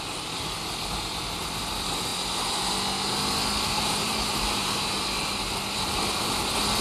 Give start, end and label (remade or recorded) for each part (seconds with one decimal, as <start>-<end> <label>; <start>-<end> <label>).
0.0-6.8 recorded